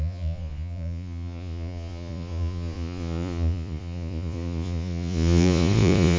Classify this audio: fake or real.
fake